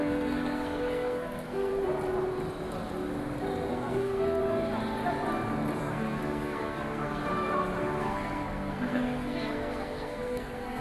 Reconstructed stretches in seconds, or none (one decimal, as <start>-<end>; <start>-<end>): 0.0-1.7; 3.7-4.4; 5.8-7.2; 7.8-10.8